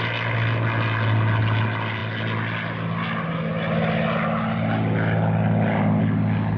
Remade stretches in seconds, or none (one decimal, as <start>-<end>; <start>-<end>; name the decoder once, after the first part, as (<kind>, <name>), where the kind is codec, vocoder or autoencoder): none